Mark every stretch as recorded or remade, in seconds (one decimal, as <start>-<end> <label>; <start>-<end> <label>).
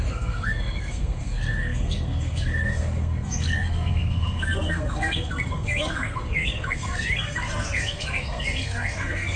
0.0-9.4 remade